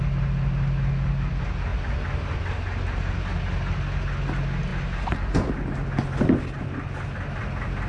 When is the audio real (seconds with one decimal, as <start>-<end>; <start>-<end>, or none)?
0.0-7.9